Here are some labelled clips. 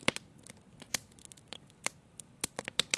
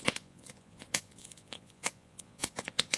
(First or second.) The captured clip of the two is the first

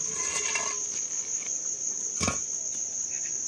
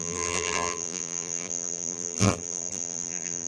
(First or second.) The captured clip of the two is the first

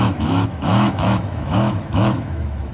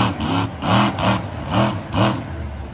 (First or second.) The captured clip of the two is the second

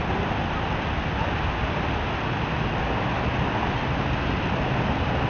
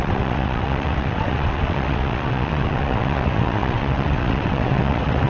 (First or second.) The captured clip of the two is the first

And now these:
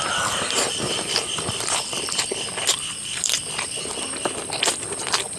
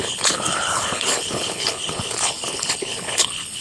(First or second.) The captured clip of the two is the first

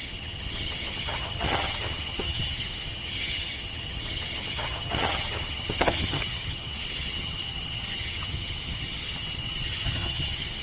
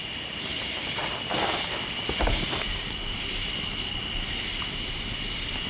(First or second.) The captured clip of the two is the second